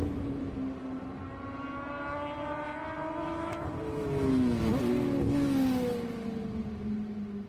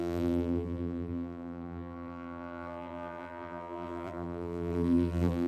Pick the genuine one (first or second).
first